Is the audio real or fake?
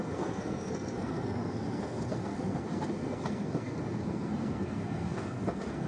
fake